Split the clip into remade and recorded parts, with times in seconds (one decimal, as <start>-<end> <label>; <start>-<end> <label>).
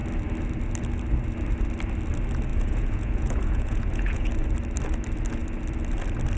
0.0-2.5 recorded; 2.5-4.3 remade; 4.3-6.4 recorded